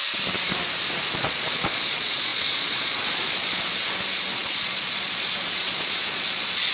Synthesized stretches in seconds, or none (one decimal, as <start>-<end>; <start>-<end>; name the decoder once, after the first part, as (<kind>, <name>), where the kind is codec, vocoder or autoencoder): 1.1-3.8 (vocoder, Vocos); 4.4-6.7